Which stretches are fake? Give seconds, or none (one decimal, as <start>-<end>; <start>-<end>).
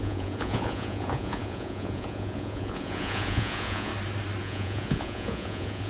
0.0-3.9; 4.4-5.9